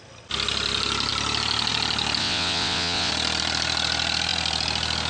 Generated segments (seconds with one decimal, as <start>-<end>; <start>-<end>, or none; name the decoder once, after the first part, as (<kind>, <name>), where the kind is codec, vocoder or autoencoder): 2.2-3.1 (vocoder, WaveNeXt)